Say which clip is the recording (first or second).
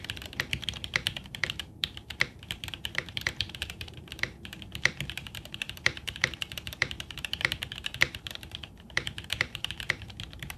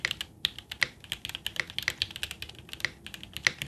second